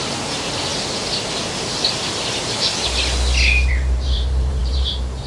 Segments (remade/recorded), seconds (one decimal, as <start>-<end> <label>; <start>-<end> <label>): 0.0-0.7 remade; 0.7-3.7 recorded; 3.7-5.3 remade